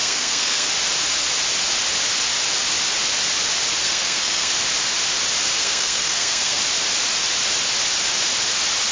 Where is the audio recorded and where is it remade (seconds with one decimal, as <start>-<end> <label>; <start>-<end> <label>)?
0.0-0.7 remade; 0.7-3.8 recorded; 3.8-4.5 remade; 4.5-5.6 recorded; 5.6-6.6 remade; 6.6-8.9 recorded